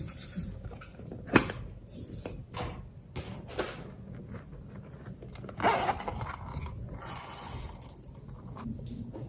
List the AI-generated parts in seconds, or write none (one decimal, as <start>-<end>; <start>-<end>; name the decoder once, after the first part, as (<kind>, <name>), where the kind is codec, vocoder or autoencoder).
6.5-7.7 (vocoder, Vocos)